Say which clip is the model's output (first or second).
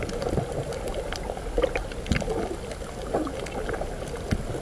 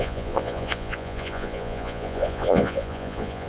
second